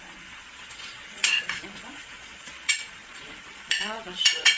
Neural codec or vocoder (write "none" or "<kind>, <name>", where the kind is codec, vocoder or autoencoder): vocoder, Vocos